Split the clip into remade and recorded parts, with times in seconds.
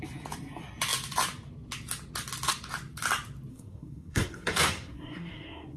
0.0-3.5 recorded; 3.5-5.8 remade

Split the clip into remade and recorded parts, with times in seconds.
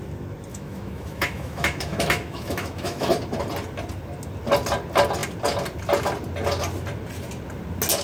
0.0-0.5 recorded; 0.5-3.1 remade; 3.1-8.0 recorded